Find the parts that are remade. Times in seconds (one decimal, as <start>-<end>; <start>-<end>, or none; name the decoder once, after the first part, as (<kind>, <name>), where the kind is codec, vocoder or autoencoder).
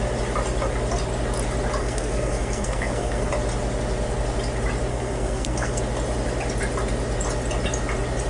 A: 1.8-3.3 (codec, SNAC); 4.9-5.8